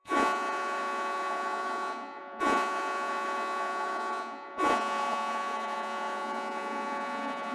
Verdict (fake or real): fake